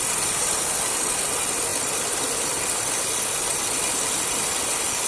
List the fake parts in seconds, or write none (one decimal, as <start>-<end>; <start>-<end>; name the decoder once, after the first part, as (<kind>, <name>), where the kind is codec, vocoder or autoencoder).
none